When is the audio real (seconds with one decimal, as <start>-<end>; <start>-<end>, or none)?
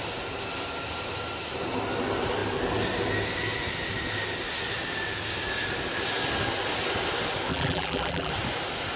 0.0-7.5; 8.3-9.0